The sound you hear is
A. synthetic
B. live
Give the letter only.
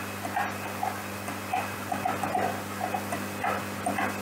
B